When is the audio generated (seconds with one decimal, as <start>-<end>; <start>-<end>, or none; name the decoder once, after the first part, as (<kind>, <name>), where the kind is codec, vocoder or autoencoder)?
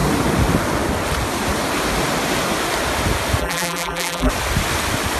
3.4-4.3 (vocoder, BigVGAN v2)